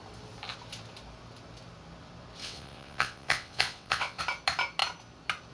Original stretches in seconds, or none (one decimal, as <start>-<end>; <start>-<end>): 0.0-2.4; 4.2-5.5